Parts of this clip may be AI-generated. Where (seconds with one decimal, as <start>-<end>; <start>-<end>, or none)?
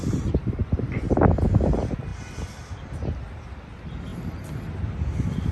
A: 0.6-1.3